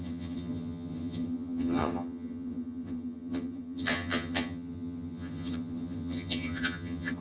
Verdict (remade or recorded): remade